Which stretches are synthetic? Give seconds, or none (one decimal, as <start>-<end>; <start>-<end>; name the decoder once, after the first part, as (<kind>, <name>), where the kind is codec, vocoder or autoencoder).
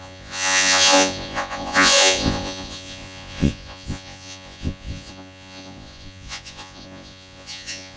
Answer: 0.0-8.0 (vocoder, Vocos)